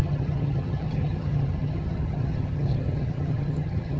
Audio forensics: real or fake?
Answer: fake